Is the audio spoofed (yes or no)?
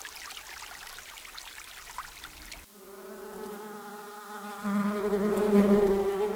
no